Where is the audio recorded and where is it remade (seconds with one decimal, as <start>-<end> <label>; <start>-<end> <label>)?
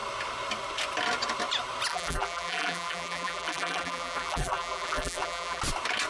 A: 0.0-1.9 recorded; 1.9-5.6 remade; 5.6-6.1 recorded